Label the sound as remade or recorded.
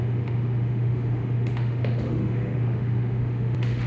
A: remade